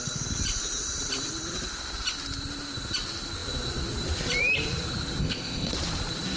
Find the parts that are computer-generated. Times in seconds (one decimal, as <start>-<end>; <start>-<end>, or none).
5.2-5.7